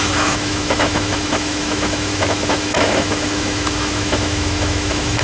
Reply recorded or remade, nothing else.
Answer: remade